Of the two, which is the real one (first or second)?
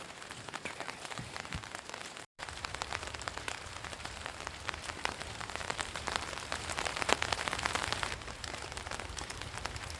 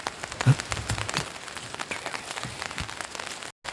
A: second